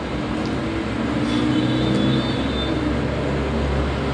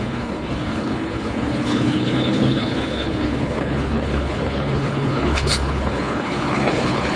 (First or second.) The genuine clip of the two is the first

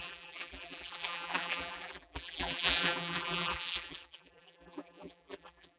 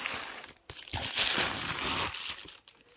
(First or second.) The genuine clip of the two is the second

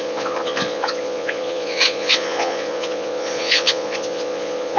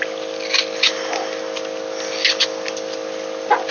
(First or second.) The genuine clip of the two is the second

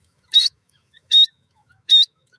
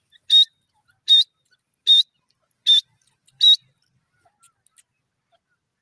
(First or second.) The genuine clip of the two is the second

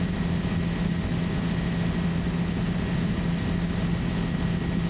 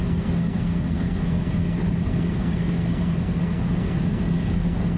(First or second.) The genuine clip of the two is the first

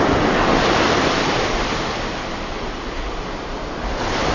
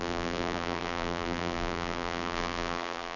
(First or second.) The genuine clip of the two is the first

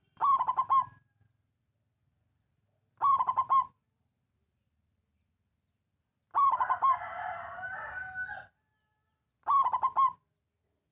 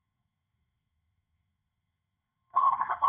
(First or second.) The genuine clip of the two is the first